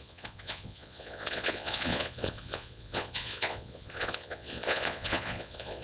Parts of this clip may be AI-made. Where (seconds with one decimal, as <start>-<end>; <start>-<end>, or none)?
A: 0.0-5.8